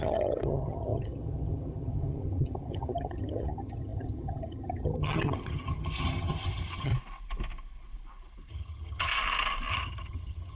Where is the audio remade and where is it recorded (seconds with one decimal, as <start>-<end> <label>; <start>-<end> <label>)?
0.0-6.9 remade; 6.9-8.5 recorded; 8.5-9.1 remade; 9.1-9.7 recorded; 9.7-10.5 remade